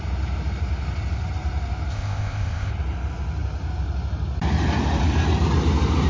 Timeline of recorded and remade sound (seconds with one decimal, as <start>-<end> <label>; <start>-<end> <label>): 0.0-1.9 recorded; 1.9-2.7 remade; 2.7-6.1 recorded